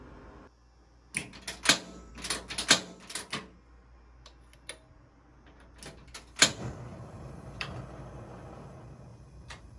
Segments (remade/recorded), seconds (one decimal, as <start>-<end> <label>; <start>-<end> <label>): 0.0-6.9 recorded; 6.9-7.8 remade; 7.8-9.1 recorded; 9.1-9.8 remade